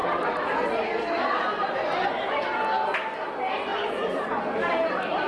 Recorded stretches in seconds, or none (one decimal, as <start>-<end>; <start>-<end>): 0.0-5.3